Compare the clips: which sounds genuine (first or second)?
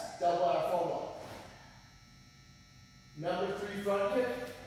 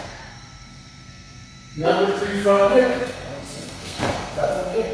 first